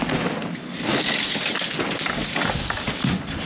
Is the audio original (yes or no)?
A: yes